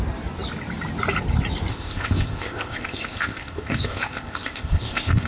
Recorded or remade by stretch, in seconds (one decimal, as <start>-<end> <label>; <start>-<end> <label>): 0.0-1.7 recorded; 1.7-5.3 remade